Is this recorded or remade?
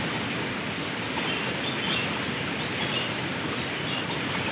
recorded